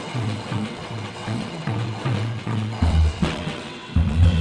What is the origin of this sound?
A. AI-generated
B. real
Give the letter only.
A